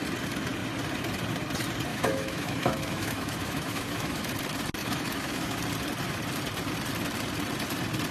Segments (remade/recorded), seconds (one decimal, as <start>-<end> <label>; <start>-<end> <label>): 0.0-1.9 recorded; 1.9-4.3 remade; 4.3-4.8 recorded; 4.8-5.6 remade; 5.6-8.1 recorded